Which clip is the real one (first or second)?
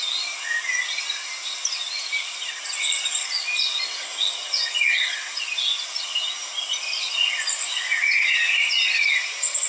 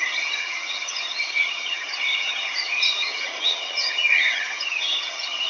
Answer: first